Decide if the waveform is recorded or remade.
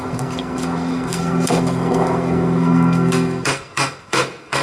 remade